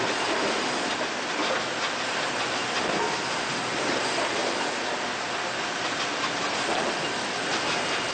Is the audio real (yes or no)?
yes